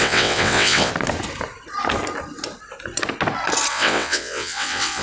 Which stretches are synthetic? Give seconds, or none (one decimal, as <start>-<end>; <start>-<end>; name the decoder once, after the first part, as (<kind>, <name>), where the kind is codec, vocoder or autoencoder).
0.0-0.9 (vocoder, WaveNeXt); 3.7-5.0